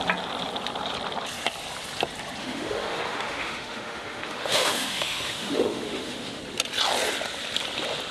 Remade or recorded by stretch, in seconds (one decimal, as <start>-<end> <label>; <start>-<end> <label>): 0.0-2.4 recorded; 2.4-6.4 remade; 6.4-8.1 recorded